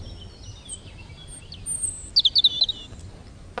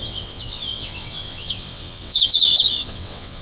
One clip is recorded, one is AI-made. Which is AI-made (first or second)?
second